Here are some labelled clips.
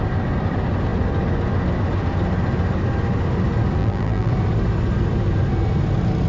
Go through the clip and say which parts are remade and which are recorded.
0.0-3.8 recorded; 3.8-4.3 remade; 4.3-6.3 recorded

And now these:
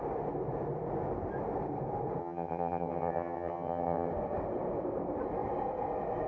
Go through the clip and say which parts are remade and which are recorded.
0.0-2.2 recorded; 2.2-4.1 remade; 4.1-6.3 recorded

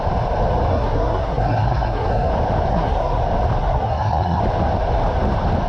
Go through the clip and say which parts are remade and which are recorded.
0.0-0.7 recorded; 0.7-2.3 remade; 2.3-2.7 recorded; 2.7-3.2 remade; 3.2-3.6 recorded; 3.6-4.4 remade; 4.4-5.7 recorded

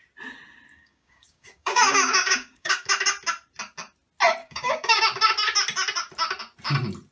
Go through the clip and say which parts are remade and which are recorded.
0.0-0.7 recorded; 0.7-2.9 remade; 2.9-4.4 recorded; 4.4-5.0 remade; 5.0-7.1 recorded

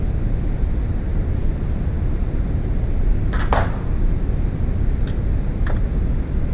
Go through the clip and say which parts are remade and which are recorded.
0.0-6.5 recorded

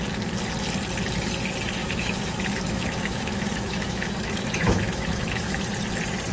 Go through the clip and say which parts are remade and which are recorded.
0.0-1.8 recorded; 1.8-5.6 remade; 5.6-6.3 recorded

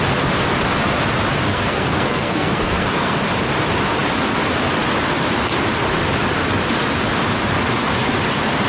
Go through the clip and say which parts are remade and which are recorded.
0.0-1.5 recorded; 1.5-3.2 remade; 3.2-8.7 recorded

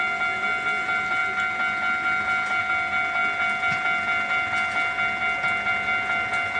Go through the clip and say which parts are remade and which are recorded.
0.0-6.6 recorded